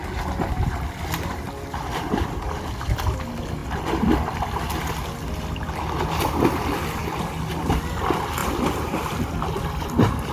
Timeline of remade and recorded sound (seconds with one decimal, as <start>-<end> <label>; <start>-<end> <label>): 0.0-8.4 recorded; 8.4-9.3 remade; 9.3-10.3 recorded